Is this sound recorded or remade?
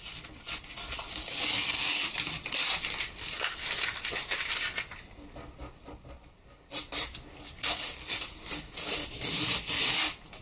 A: recorded